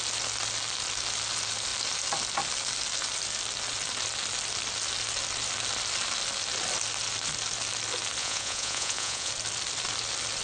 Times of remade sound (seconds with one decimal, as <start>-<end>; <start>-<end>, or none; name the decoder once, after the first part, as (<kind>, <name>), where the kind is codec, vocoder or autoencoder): 8.2-9.3 (vocoder, Vocos)